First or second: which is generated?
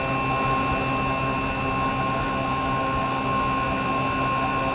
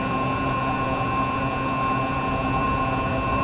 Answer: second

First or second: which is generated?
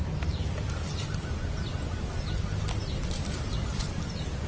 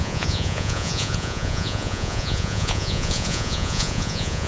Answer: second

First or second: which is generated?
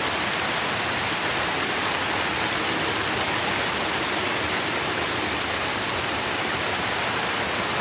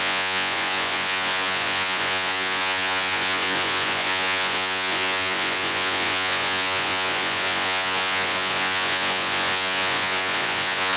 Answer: second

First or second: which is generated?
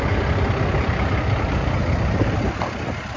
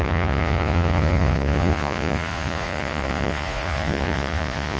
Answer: second